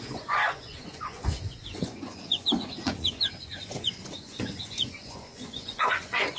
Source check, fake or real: fake